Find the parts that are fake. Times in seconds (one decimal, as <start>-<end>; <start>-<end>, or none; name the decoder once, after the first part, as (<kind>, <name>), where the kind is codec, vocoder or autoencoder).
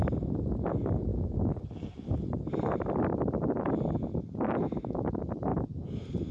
none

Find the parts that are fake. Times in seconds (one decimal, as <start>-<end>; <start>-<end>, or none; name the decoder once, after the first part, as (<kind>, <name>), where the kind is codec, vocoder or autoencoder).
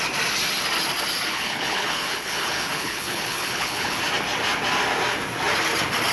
1.3-4.0 (codec, HILCodec)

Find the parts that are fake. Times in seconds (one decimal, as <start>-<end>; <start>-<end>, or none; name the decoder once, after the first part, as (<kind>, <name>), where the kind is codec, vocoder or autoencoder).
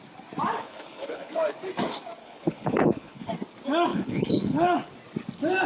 0.6-1.3 (codec, HILCodec); 2.2-3.3; 3.9-4.9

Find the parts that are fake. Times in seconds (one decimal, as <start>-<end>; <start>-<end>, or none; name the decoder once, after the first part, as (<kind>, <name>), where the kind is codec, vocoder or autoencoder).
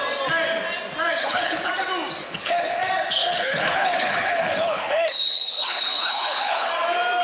1.2-1.7 (codec, HILCodec); 2.2-2.8; 3.2-6.7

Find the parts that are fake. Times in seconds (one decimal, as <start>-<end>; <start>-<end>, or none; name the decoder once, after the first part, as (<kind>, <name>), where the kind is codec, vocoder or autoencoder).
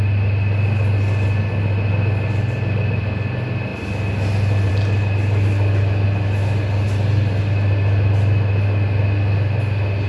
none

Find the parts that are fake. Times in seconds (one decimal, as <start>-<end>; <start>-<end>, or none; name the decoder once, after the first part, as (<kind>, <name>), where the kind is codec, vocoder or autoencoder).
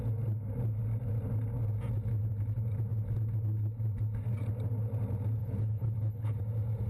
5.4-6.4 (codec, HILCodec)